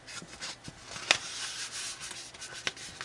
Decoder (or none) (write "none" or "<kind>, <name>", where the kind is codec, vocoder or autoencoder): none